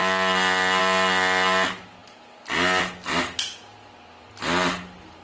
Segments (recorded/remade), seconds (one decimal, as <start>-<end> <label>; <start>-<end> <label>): 0.0-5.2 recorded